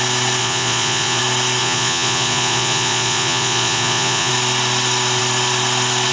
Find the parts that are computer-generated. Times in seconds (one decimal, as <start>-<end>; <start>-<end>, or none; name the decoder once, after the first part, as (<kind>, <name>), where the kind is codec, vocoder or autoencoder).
0.4-1.2 (vocoder, Vocos); 1.6-4.3

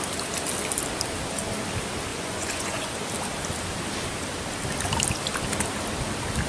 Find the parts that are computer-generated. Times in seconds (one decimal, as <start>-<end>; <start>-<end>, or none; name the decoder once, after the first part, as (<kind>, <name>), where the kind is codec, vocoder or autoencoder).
2.1-2.9 (vocoder, Vocos)